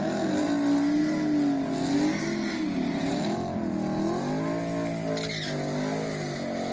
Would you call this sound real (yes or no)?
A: yes